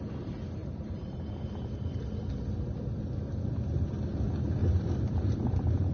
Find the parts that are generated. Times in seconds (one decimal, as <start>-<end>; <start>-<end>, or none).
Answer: 0.6-1.5; 4.6-5.9